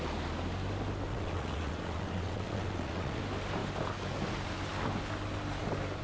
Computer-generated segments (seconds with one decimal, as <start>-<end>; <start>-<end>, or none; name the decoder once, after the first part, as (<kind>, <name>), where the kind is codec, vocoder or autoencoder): 1.1-3.2 (vocoder, WaveNeXt)

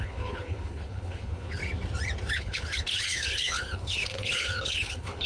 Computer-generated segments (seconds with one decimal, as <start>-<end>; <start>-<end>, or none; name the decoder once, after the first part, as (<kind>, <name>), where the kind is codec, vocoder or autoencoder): 0.0-1.6 (codec, HILCodec); 2.3-5.3

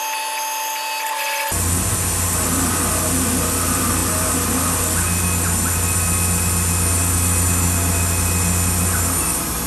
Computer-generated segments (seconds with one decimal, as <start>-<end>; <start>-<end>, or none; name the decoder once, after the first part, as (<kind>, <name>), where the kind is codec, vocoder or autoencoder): none

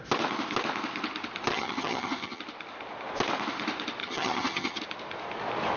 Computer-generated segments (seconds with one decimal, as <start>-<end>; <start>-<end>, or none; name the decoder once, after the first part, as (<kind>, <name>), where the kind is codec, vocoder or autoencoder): 1.5-2.4 (vocoder, HiFi-GAN); 4.0-4.8

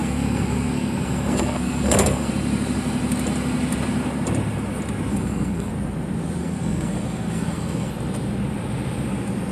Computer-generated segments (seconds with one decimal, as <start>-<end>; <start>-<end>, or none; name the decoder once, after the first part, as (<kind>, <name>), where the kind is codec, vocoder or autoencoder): 0.0-2.3 (codec, SNAC); 5.1-5.7; 6.4-7.9

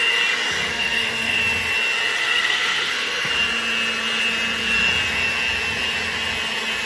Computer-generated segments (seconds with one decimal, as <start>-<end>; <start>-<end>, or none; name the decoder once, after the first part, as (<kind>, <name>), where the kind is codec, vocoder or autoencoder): 0.7-1.4 (codec, SNAC); 2.2-3.3